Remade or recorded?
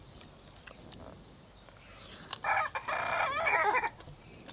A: recorded